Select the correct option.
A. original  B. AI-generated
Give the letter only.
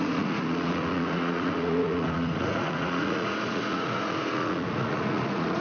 B